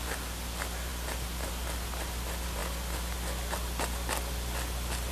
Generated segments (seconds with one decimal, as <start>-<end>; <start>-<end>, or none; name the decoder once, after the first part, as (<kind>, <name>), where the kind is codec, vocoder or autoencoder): none